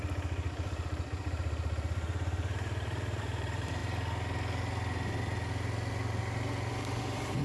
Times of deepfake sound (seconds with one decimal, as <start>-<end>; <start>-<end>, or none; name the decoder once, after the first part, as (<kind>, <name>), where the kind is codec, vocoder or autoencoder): 0.0-3.8 (vocoder, BigVGAN v2); 6.7-7.4